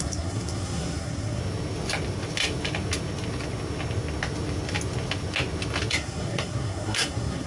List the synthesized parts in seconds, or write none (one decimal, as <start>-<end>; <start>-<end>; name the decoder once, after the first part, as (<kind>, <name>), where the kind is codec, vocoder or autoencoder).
0.0-1.4 (codec, SNAC); 5.9-7.5